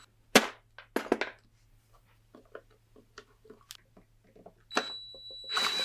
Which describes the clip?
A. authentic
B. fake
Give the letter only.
A